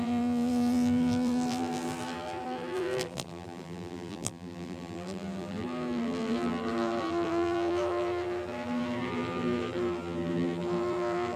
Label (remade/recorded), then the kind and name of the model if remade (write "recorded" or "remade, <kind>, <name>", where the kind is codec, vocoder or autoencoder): remade, vocoder, BigVGAN v2